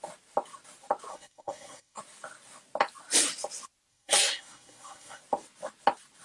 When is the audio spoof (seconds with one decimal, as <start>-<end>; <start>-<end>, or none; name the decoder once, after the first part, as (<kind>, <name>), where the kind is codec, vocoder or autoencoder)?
1.1-2.0 (codec, SNAC); 3.9-5.2